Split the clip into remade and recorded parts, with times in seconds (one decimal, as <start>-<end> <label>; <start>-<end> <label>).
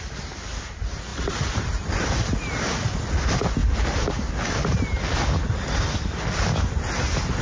0.0-7.4 recorded